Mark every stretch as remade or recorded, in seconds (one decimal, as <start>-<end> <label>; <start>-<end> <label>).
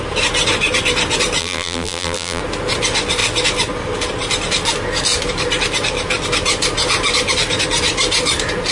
0.0-1.4 recorded; 1.4-2.4 remade; 2.4-8.7 recorded